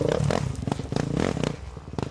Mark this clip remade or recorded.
recorded